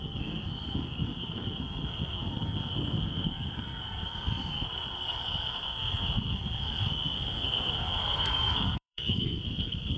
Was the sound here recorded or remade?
remade